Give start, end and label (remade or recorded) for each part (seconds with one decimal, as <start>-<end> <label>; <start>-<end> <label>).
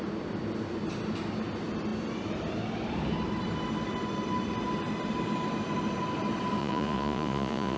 0.0-6.6 recorded; 6.6-7.8 remade